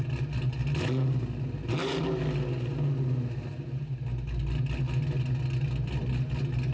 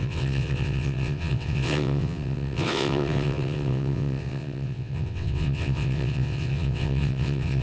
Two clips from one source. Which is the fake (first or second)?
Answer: second